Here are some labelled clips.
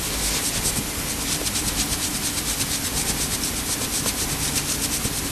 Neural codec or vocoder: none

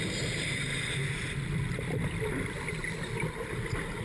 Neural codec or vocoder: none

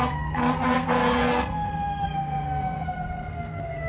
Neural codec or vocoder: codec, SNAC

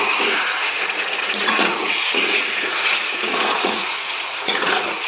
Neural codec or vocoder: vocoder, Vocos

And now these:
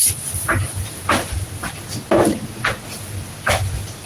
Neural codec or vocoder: none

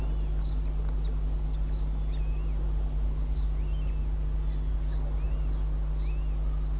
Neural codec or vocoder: none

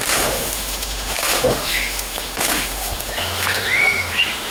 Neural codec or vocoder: autoencoder, DAC-VAE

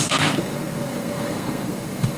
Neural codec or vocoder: codec, SNAC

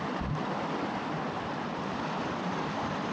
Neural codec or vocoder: none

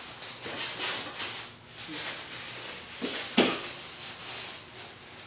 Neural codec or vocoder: none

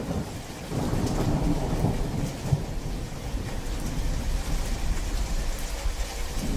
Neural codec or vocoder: none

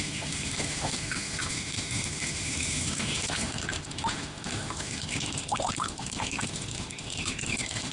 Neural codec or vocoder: autoencoder, DAC-VAE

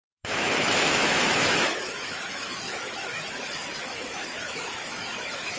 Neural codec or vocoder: autoencoder, DAC-VAE